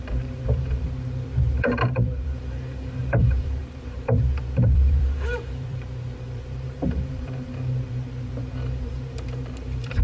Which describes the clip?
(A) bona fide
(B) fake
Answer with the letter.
B